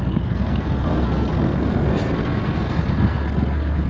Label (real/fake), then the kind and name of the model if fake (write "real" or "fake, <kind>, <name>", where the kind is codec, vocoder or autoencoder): fake, codec, SNAC